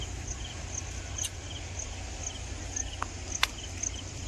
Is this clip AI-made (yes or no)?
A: no